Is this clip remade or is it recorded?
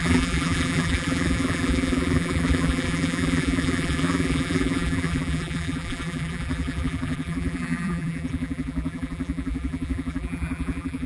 remade